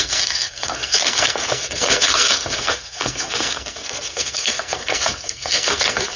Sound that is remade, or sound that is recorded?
remade